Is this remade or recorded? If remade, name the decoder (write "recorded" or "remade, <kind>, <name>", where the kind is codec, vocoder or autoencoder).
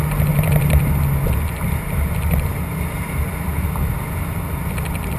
remade, vocoder, BigVGAN v2